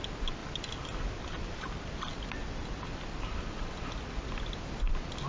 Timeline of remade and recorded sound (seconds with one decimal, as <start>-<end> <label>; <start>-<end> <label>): 0.0-5.3 recorded